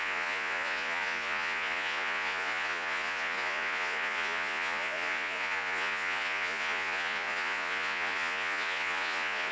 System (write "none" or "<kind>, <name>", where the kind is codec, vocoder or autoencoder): vocoder, Vocos